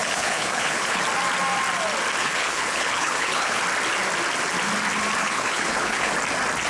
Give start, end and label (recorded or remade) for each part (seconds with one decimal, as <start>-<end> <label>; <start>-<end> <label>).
0.0-1.0 remade; 1.0-2.2 recorded; 2.2-3.6 remade; 3.6-5.2 recorded; 5.2-6.1 remade; 6.1-6.7 recorded